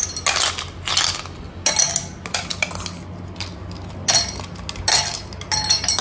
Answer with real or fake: real